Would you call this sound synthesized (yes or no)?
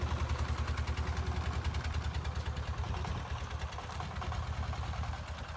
no